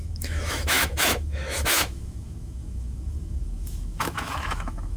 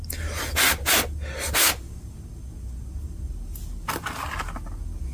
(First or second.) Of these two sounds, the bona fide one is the second